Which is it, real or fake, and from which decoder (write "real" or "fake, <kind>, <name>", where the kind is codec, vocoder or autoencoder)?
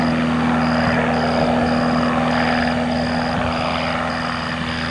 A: real